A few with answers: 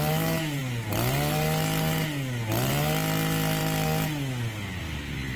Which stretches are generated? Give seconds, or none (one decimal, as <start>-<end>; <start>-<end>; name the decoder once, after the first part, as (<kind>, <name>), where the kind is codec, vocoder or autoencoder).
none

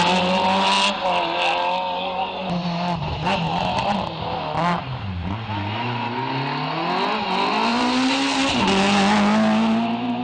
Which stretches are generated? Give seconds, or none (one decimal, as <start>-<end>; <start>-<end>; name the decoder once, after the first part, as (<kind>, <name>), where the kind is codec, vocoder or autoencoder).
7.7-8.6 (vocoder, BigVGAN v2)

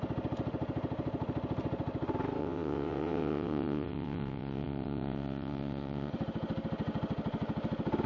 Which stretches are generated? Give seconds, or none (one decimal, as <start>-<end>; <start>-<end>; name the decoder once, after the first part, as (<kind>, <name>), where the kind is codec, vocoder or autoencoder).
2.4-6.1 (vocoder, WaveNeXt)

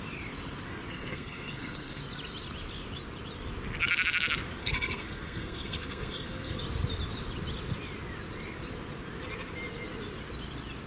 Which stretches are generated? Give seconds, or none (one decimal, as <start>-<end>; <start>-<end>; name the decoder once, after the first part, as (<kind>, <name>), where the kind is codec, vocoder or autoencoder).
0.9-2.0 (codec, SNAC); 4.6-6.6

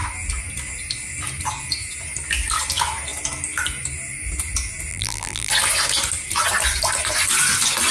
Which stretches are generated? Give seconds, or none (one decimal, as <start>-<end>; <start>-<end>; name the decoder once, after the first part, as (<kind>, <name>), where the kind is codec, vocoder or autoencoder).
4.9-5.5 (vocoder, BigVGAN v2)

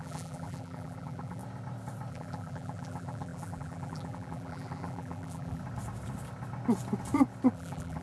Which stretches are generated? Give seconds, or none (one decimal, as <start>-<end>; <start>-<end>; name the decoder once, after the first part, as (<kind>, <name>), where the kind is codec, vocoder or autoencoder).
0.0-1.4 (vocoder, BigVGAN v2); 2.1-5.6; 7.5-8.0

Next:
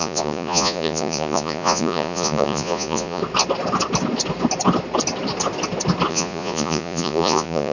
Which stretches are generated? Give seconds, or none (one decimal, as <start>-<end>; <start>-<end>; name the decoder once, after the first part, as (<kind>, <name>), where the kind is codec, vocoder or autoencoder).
0.0-3.2 (vocoder, Vocos); 6.1-7.7